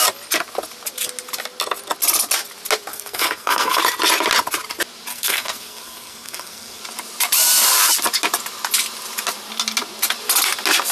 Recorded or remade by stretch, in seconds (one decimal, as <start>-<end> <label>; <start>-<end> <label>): 0.0-2.9 recorded; 2.9-3.8 remade; 3.8-5.1 recorded; 5.1-6.8 remade; 6.8-10.9 recorded